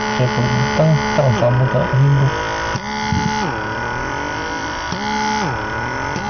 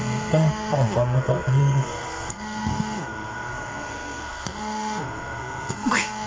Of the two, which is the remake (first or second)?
second